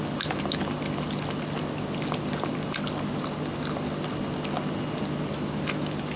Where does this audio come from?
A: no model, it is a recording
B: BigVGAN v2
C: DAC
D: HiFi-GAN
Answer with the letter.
A